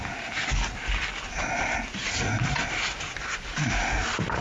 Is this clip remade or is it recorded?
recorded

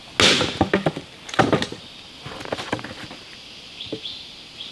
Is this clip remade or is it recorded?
recorded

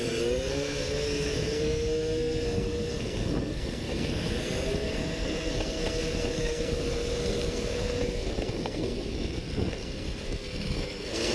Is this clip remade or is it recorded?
remade